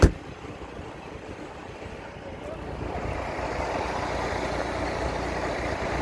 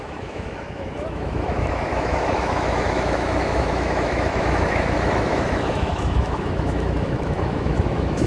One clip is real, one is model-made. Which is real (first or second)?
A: first